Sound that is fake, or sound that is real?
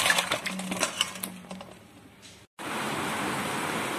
real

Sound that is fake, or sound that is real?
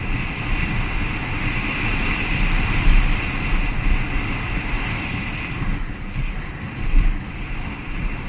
real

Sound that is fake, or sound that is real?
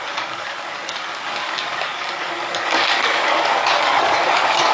fake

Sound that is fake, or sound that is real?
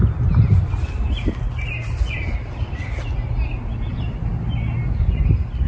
real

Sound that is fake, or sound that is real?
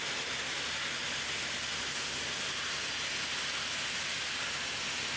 real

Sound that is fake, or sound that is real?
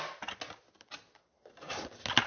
real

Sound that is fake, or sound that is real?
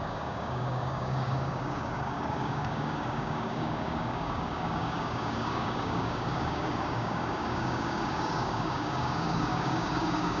fake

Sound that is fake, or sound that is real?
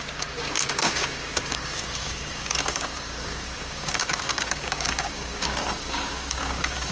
fake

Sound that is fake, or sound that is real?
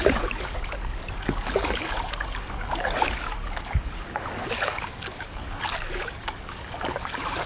fake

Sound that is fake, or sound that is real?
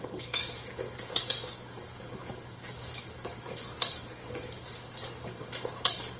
fake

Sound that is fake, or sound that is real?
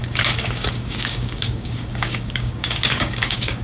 fake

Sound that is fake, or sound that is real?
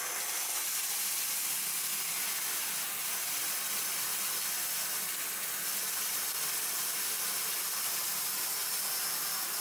real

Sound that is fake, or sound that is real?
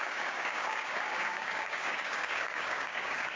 fake